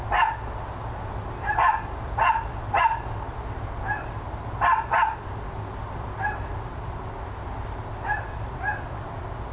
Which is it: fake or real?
real